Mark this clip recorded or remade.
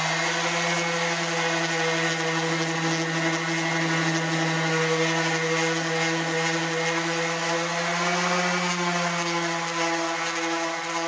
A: recorded